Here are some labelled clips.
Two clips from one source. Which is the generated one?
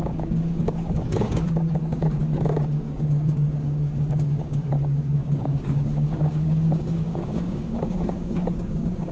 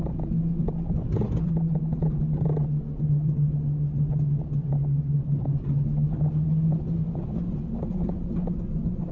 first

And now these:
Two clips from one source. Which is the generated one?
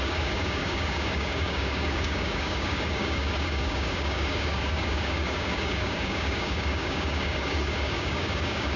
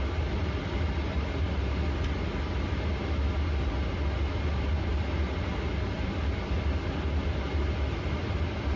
first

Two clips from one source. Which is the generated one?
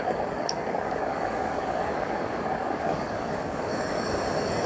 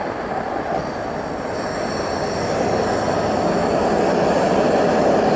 first